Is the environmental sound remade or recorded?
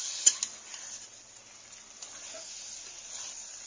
recorded